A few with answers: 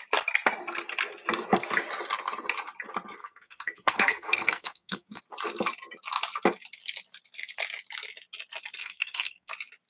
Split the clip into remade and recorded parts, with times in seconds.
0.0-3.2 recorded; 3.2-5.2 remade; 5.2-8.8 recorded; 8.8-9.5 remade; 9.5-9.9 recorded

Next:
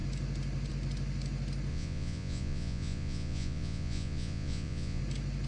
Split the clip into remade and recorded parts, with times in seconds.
0.0-1.7 recorded; 1.7-5.0 remade; 5.0-5.5 recorded

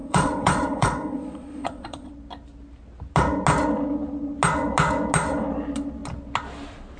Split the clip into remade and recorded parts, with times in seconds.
0.0-2.1 remade; 2.1-7.0 recorded

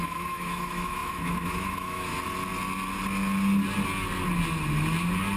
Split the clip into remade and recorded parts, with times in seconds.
0.0-2.1 remade; 2.1-5.4 recorded

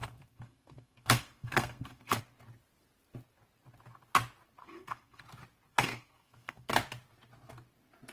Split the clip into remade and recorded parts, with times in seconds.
0.0-2.2 remade; 2.2-4.6 recorded; 4.6-5.2 remade; 5.2-5.7 recorded; 5.7-6.7 remade; 6.7-8.1 recorded

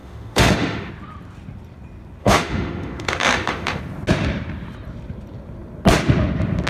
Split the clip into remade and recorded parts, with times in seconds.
0.0-0.9 remade; 0.9-2.2 recorded; 2.2-3.8 remade; 3.8-6.7 recorded

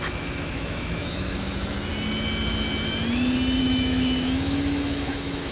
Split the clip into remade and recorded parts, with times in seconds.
0.0-1.9 remade; 1.9-3.6 recorded; 3.6-5.5 remade

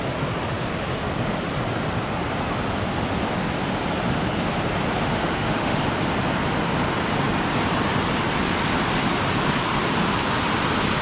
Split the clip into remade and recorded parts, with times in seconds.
0.0-5.1 recorded; 5.1-5.8 remade; 5.8-11.0 recorded